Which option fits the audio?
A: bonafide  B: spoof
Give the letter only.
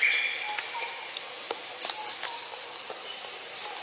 A